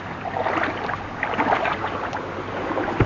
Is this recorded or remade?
recorded